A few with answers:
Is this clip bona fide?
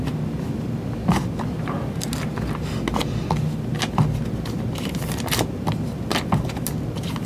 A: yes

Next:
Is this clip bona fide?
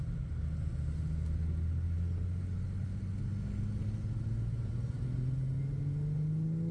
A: yes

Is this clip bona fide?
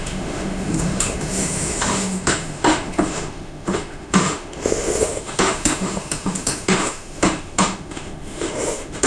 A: no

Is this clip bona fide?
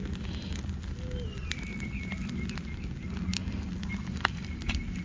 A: yes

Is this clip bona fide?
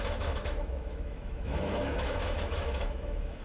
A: no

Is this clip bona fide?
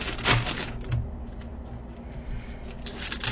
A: yes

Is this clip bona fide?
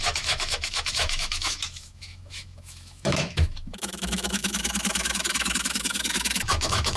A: no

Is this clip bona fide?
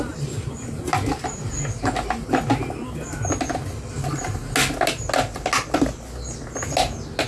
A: yes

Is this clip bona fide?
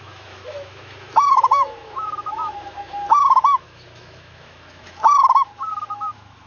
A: no